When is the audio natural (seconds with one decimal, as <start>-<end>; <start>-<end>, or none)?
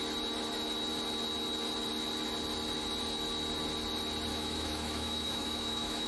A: 0.0-4.3